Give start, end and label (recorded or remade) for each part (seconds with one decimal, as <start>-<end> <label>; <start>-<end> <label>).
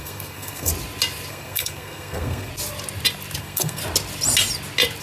0.0-0.7 remade; 0.7-1.3 recorded; 1.3-2.5 remade; 2.5-3.4 recorded; 3.4-3.8 remade; 3.8-5.0 recorded